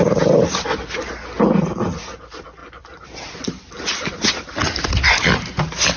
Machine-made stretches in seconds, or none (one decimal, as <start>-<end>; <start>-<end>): 0.0-0.7; 1.4-6.0